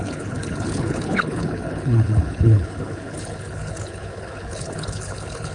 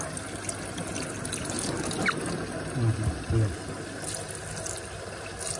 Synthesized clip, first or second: first